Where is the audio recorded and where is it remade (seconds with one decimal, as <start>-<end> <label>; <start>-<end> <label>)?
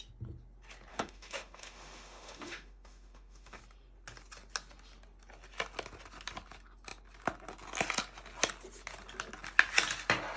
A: 0.0-0.9 recorded; 0.9-3.6 remade; 3.6-10.4 recorded